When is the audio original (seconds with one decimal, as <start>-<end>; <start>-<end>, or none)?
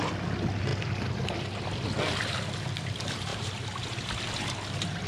0.0-5.1